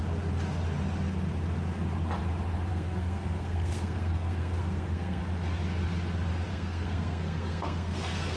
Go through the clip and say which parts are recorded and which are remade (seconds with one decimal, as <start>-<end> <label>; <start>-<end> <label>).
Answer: 0.0-2.7 recorded; 2.7-5.2 remade; 5.2-6.5 recorded; 6.5-8.4 remade